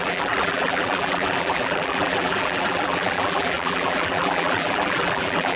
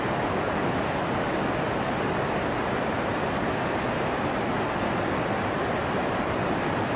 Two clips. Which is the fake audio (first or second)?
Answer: first